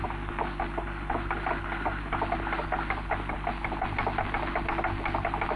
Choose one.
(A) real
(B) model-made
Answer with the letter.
A